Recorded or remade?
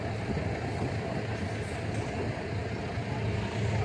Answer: recorded